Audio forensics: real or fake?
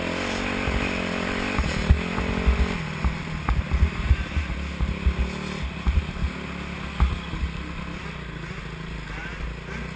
real